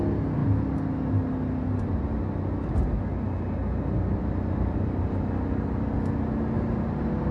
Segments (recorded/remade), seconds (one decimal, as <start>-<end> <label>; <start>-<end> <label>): 0.0-7.3 recorded